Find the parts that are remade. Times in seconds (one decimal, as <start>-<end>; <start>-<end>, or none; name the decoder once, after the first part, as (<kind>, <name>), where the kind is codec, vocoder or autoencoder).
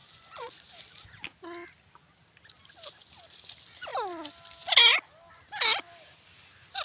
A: 0.0-0.7 (vocoder, Vocos)